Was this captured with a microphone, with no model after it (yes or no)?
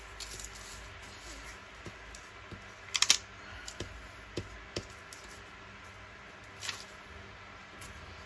yes